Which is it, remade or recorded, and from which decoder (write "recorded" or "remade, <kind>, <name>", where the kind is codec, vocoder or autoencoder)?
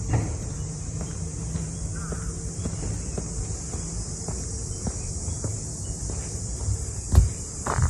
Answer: remade, vocoder, BigVGAN v2